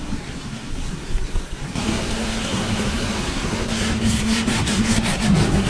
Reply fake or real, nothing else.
fake